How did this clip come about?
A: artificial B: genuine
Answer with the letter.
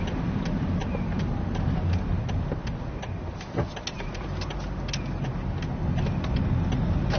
B